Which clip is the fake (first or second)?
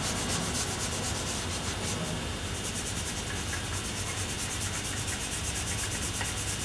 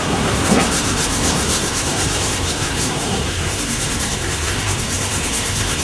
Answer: second